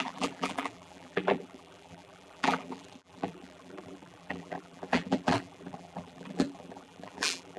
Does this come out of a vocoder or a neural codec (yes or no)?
yes